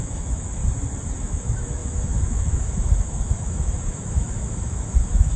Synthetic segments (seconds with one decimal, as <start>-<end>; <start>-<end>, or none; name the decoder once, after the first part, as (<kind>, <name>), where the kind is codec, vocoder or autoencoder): 0.0-0.6 (autoencoder, DAC-VAE); 1.2-5.4